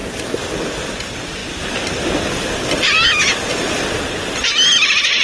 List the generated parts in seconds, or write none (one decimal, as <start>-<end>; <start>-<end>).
none